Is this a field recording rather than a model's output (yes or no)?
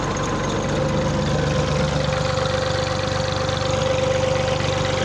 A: yes